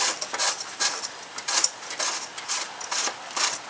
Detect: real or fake real